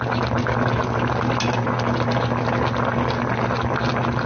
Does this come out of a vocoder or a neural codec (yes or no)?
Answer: no